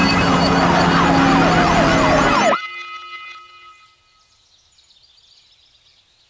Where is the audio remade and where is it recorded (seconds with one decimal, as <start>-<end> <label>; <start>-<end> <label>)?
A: 0.0-6.3 recorded